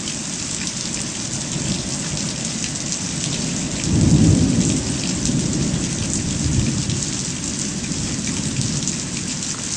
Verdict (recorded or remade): recorded